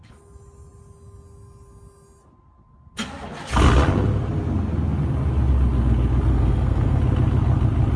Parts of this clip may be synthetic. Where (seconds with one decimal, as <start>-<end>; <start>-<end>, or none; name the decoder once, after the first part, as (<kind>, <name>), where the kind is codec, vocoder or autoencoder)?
6.3-7.0 (codec, SNAC)